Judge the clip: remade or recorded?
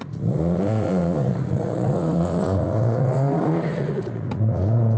remade